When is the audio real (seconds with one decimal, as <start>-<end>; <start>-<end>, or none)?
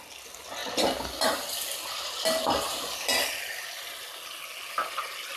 0.0-5.4